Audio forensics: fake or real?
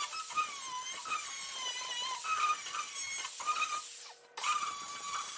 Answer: real